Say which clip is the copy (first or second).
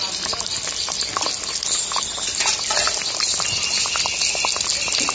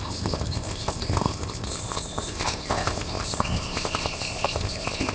second